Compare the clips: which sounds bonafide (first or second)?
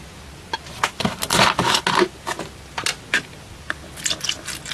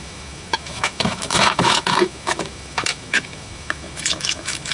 first